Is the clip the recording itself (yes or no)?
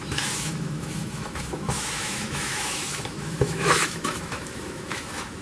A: no